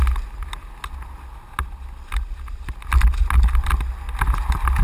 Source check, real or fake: real